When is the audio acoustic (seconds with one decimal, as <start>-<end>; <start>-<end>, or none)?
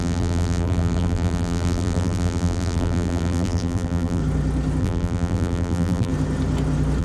4.2-4.8; 6.1-7.0